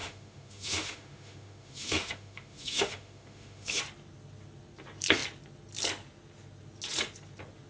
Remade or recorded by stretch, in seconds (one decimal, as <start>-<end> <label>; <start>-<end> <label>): 0.0-3.8 remade; 3.8-7.7 recorded